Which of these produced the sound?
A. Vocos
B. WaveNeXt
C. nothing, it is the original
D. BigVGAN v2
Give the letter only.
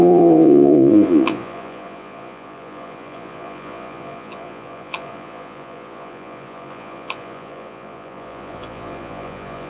A